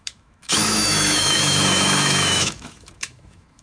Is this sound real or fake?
fake